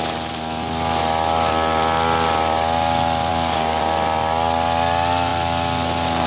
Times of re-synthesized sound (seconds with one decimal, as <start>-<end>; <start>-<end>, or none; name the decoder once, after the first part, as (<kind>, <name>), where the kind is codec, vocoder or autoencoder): 3.3-3.8 (codec, DAC)